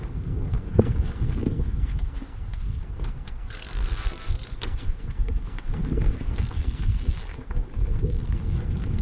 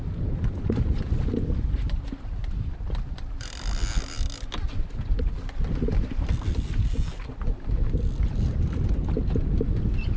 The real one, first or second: second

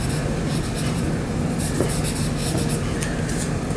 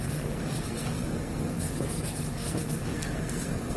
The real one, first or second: first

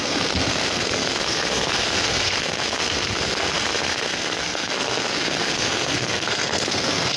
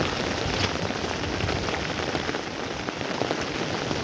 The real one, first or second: second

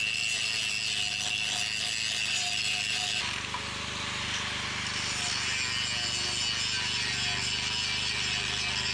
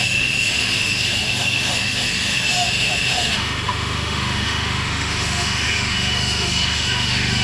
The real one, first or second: first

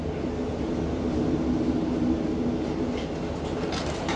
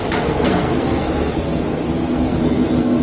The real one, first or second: first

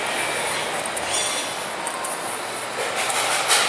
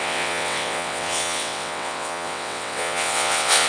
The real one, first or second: first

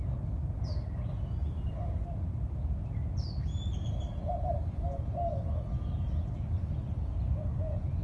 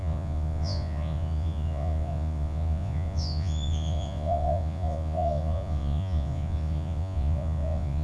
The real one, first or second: first